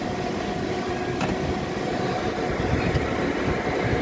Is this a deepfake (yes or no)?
no